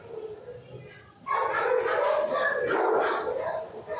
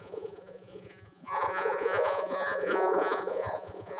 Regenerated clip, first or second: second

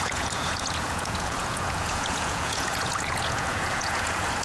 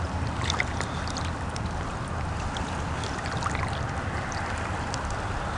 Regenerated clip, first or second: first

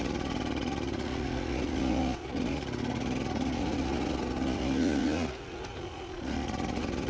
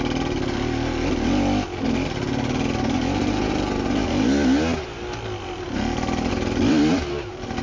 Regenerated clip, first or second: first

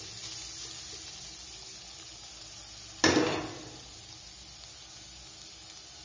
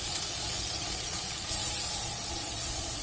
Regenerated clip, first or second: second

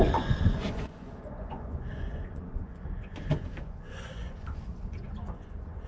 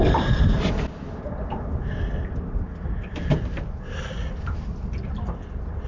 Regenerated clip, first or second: first